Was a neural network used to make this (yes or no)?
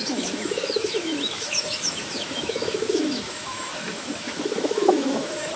yes